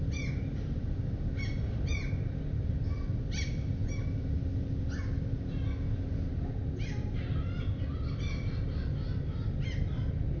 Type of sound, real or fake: real